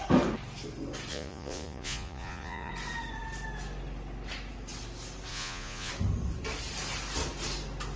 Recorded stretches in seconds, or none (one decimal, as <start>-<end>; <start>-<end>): 0.0-1.1; 2.7-5.3; 5.9-8.0